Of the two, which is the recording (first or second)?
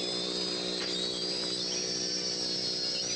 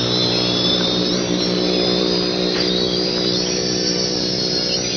first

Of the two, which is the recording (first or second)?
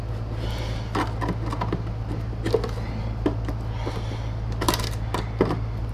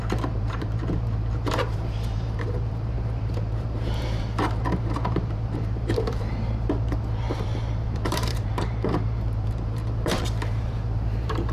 first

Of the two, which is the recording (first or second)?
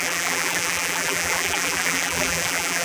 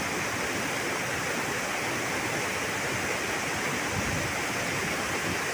second